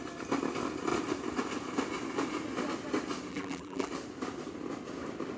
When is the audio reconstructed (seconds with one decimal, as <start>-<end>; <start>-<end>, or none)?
3.3-3.9